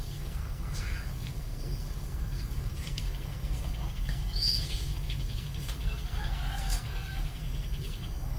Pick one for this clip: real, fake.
fake